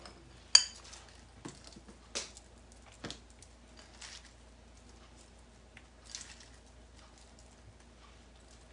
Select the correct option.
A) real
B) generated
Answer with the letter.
A